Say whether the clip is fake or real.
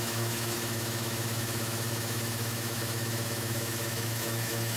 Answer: fake